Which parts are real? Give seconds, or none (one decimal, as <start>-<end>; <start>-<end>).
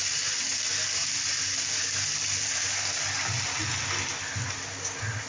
0.0-5.3